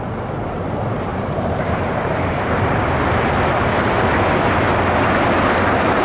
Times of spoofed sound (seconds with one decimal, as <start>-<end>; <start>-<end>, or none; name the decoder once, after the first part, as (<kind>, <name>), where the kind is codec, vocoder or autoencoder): 1.1-3.0 (vocoder, BigVGAN v2)

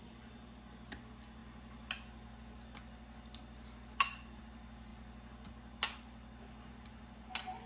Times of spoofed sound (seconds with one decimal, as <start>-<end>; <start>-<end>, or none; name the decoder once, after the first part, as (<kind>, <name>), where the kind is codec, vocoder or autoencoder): none

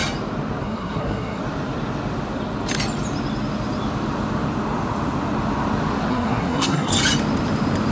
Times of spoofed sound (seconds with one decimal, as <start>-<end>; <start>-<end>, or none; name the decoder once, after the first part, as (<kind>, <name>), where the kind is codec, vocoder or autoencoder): 0.6-1.4 (codec, SNAC); 6.1-6.9

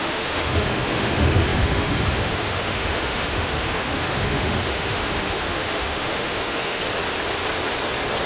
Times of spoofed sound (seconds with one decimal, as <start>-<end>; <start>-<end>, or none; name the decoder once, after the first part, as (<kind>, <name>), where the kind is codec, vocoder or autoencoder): 0.0-6.8 (autoencoder, DAC-VAE)

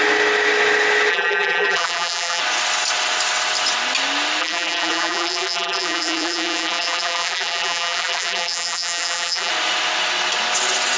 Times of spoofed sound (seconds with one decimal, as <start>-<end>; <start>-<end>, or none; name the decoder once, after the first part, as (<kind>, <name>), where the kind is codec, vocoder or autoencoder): 1.1-2.4 (vocoder, BigVGAN v2); 4.4-9.5

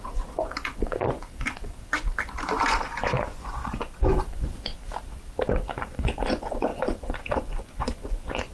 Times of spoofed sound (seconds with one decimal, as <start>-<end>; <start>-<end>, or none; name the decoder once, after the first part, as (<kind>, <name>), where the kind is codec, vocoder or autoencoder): 0.0-4.7 (vocoder, Vocos); 5.5-8.5